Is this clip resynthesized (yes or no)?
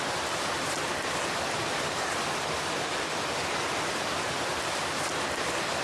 no